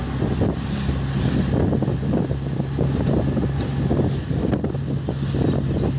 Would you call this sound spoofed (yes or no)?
no